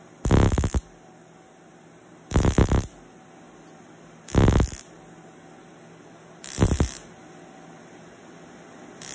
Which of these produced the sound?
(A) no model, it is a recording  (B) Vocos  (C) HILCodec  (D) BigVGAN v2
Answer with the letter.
A